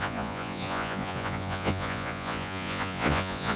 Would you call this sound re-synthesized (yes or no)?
yes